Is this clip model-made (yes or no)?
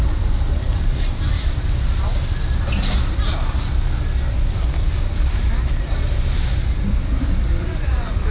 no